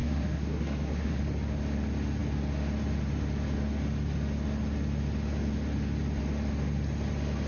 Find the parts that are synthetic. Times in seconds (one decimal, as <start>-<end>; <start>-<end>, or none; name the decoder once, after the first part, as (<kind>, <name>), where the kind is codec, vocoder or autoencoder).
0.0-1.2 (codec, SNAC)

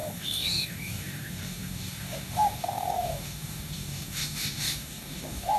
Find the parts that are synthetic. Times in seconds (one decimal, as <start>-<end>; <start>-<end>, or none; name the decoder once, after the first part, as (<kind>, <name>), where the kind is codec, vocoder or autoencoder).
0.0-5.6 (codec, DAC)

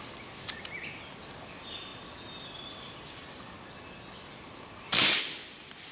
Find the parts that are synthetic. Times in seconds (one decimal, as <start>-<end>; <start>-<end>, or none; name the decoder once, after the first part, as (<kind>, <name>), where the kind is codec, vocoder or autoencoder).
none

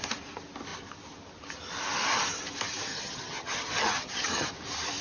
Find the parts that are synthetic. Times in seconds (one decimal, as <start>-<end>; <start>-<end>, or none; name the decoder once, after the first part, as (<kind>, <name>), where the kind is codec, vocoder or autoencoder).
2.9-4.5 (vocoder, HiFi-GAN)